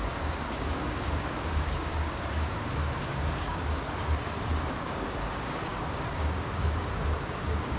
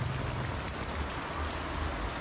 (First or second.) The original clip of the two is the second